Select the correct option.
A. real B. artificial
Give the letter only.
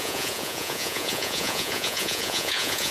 B